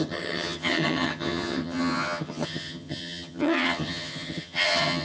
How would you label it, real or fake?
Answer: fake